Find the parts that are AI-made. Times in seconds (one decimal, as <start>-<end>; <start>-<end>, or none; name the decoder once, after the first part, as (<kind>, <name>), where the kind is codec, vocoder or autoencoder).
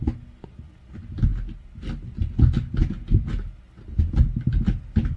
none